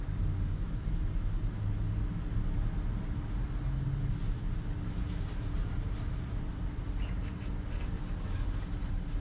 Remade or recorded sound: recorded